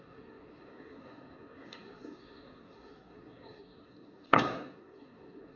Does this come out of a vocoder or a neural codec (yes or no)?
yes